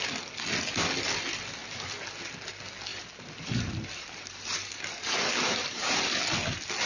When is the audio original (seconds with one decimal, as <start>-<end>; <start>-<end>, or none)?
0.0-2.9; 6.0-6.8